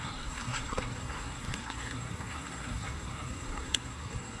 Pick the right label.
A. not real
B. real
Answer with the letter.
A